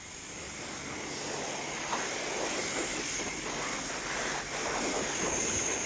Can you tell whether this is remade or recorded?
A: recorded